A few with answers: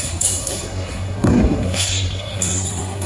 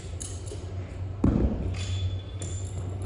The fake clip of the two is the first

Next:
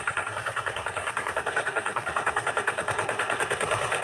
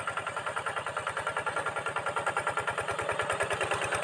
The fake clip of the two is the first